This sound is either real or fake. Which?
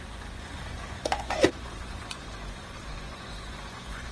fake